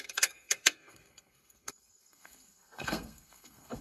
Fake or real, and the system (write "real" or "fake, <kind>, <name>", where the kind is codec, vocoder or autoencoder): fake, codec, SNAC